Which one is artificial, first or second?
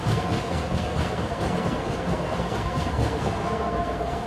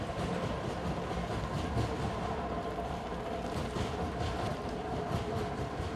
first